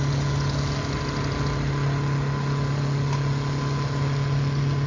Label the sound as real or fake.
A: real